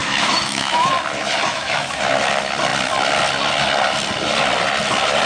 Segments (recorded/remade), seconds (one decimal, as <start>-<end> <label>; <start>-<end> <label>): 0.0-0.9 remade; 0.9-1.5 recorded; 1.5-2.0 remade; 2.0-5.3 recorded